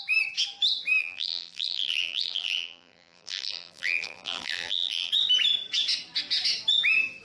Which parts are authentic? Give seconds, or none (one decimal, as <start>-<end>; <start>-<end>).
0.0-1.0; 5.1-7.2